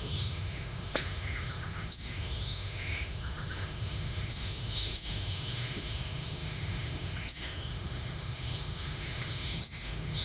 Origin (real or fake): fake